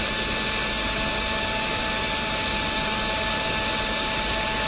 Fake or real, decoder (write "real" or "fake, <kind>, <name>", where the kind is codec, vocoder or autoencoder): real